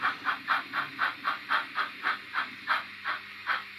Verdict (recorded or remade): remade